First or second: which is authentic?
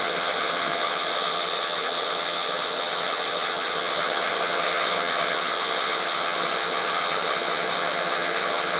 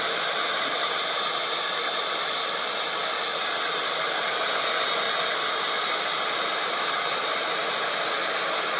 second